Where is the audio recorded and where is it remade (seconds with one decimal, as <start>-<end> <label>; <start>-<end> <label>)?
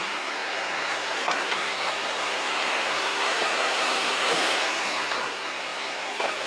0.0-6.5 remade